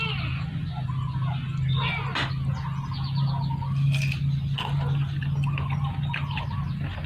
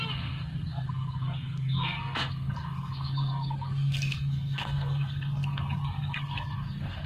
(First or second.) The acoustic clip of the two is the first